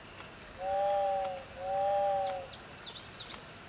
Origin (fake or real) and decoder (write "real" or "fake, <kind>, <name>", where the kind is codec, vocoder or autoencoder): real